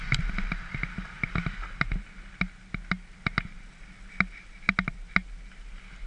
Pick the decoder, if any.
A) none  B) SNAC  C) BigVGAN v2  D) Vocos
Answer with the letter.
A